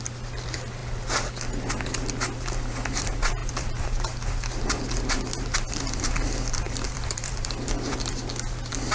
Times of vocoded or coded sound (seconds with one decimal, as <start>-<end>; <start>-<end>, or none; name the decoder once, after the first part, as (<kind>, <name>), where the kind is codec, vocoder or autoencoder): 3.4-8.1 (vocoder, BigVGAN v2)